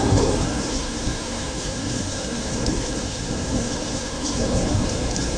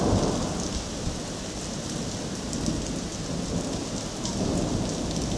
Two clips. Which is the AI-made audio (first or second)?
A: first